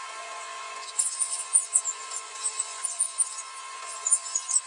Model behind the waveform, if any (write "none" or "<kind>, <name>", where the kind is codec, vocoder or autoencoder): vocoder, Vocos